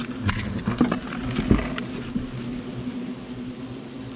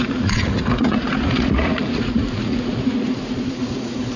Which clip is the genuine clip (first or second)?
first